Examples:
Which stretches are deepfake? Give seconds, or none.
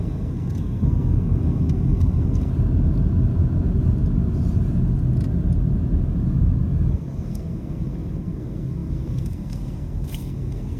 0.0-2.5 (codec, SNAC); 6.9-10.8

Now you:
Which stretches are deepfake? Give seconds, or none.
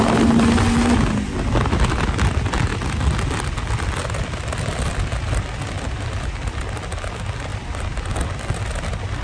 none